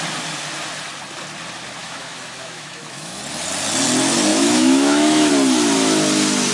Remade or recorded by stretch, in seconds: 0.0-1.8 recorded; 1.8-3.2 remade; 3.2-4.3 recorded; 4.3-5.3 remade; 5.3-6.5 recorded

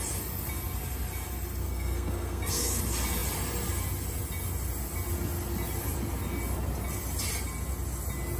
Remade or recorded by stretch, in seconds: 0.0-1.6 recorded; 1.6-2.8 remade; 2.8-8.4 recorded